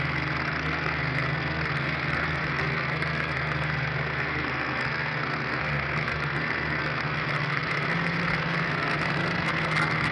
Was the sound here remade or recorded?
remade